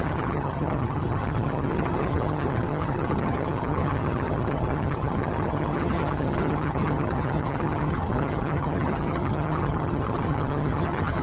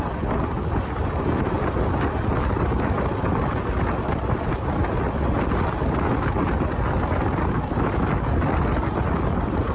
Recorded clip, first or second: second